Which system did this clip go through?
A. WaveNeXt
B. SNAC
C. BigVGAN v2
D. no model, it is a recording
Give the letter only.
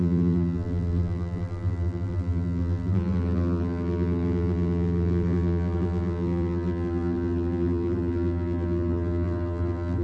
C